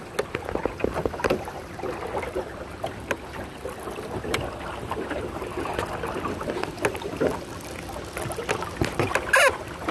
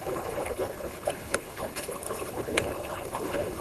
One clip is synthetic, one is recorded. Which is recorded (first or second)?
first